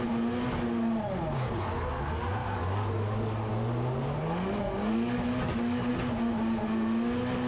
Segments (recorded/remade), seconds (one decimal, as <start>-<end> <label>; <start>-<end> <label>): 0.0-2.4 recorded; 2.4-3.5 remade; 3.5-4.2 recorded; 4.2-5.9 remade; 5.9-7.5 recorded